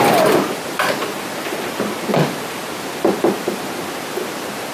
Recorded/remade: recorded